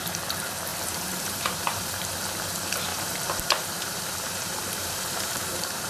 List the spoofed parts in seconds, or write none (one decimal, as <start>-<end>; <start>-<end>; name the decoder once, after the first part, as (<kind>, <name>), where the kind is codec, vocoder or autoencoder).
0.7-2.1 (vocoder, BigVGAN v2); 2.9-5.9